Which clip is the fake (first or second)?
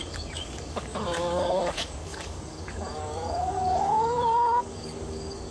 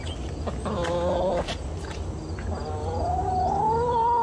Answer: first